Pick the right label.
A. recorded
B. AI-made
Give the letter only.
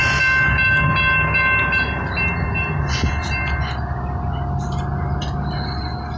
A